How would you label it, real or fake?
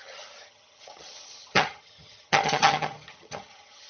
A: fake